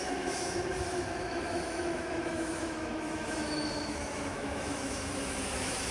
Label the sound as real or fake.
fake